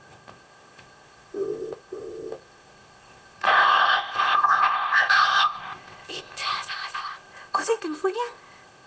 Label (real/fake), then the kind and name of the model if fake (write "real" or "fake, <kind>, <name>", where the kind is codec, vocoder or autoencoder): fake, codec, ZipCodec